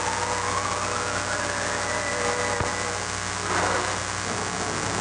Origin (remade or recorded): recorded